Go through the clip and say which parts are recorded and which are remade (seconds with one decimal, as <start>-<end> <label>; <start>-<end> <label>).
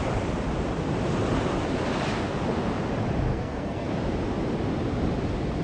0.0-3.3 recorded; 3.3-3.9 remade; 3.9-5.6 recorded